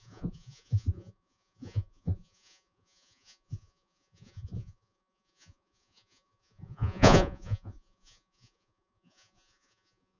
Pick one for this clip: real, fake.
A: fake